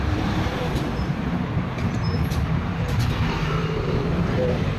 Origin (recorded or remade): remade